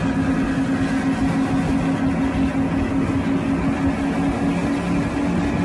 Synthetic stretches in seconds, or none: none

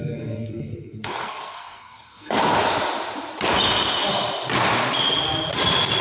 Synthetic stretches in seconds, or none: 0.0-2.4

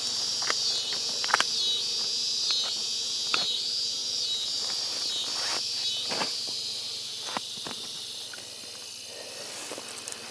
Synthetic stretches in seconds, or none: none

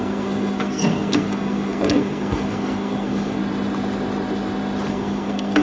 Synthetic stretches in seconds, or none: 0.0-3.4; 4.9-5.6

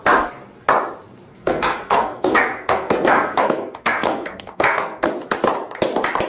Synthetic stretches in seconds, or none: 1.3-5.1